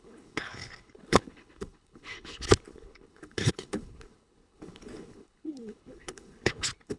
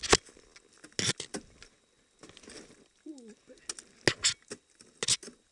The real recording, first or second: second